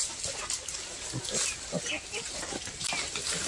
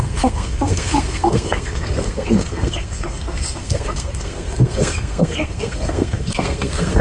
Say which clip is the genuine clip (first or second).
first